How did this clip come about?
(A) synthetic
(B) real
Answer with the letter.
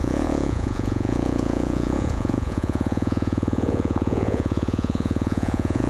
A